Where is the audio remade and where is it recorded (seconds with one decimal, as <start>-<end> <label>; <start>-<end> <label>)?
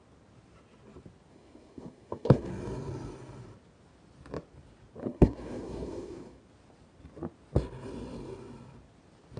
0.0-1.3 recorded; 1.3-2.5 remade; 2.5-5.0 recorded; 5.0-6.4 remade; 6.4-9.4 recorded